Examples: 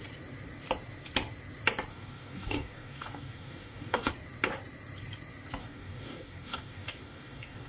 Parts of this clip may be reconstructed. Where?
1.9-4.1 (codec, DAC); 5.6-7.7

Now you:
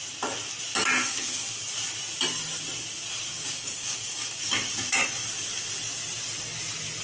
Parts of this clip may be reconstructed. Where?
1.1-1.6 (codec, DAC); 3.3-4.5